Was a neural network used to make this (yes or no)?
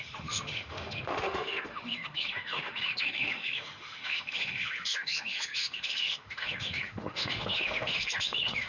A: yes